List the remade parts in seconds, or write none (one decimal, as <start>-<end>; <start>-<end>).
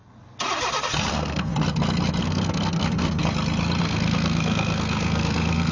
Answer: 1.1-1.5; 2.2-3.2; 3.8-5.7